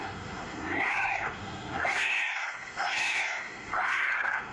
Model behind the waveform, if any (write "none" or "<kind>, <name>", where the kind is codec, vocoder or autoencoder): codec, SNAC